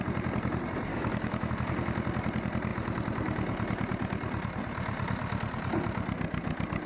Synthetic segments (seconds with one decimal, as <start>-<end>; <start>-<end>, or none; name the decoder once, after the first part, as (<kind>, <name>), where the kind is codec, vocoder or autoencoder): 0.9-1.5 (autoencoder, DAC-VAE)